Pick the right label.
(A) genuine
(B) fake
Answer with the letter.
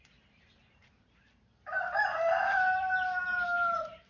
B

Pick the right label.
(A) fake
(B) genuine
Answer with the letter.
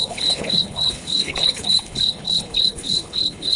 A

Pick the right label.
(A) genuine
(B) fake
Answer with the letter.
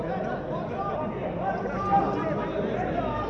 A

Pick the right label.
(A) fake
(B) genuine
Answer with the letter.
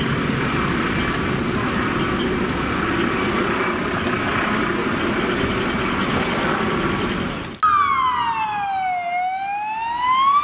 B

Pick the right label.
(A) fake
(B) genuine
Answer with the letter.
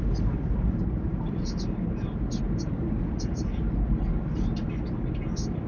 B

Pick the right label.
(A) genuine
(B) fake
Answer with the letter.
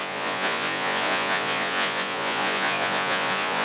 B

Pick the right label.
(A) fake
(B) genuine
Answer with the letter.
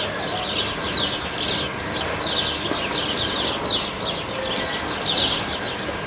B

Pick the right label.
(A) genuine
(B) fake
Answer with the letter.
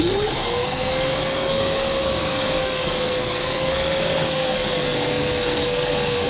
B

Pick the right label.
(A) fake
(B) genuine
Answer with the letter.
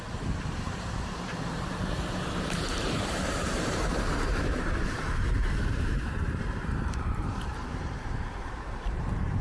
A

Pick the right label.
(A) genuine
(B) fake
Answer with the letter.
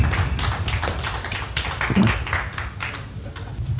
A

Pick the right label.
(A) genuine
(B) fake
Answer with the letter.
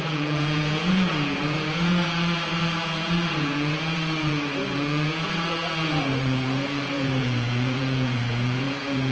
B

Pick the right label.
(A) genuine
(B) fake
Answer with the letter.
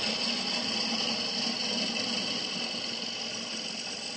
B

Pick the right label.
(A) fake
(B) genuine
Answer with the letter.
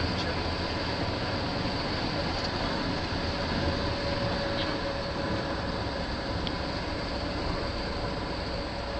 B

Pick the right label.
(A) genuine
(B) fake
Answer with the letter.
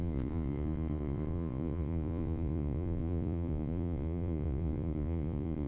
B